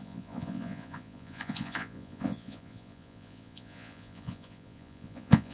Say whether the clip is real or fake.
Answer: fake